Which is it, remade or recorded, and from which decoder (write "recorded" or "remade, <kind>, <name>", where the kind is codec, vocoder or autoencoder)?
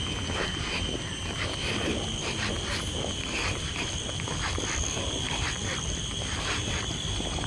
remade, vocoder, BigVGAN v2